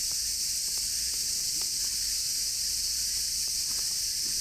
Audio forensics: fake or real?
real